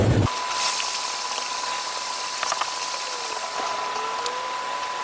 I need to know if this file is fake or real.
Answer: real